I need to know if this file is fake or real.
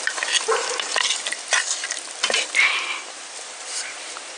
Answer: fake